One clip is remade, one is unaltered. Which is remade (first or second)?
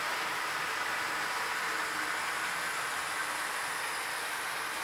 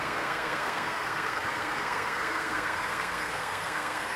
second